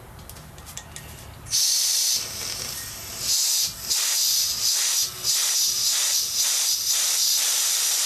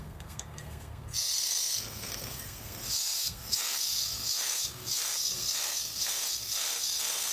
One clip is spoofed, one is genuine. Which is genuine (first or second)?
first